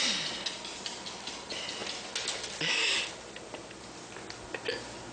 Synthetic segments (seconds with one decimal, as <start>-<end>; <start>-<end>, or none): 0.0-1.8